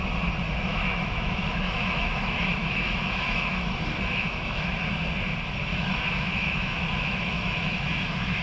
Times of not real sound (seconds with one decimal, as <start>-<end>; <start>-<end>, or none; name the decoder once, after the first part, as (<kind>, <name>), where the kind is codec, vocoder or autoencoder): 0.7-4.7 (autoencoder, DAC-VAE); 5.7-8.4